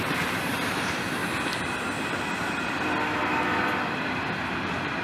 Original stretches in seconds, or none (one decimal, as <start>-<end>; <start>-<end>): 1.2-4.0